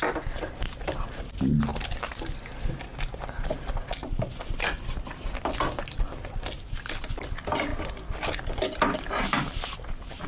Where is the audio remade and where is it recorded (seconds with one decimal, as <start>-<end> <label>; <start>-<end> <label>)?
0.0-10.3 recorded